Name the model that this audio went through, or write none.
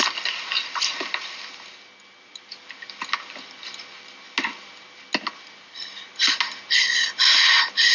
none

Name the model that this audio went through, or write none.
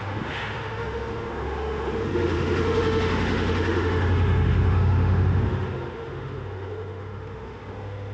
autoencoder, DAC-VAE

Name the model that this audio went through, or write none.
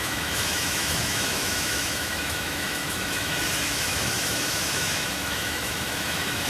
autoencoder, DAC-VAE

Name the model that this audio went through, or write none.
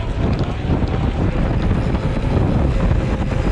none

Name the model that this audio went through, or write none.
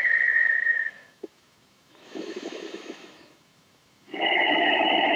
autoencoder, DAC-VAE